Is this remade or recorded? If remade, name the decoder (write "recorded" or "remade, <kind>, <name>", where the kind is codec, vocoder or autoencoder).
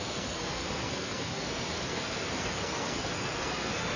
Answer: remade, codec, SNAC